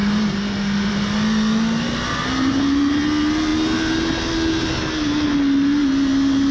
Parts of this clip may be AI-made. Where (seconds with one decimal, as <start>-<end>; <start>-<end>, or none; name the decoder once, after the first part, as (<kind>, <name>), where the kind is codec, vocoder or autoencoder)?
none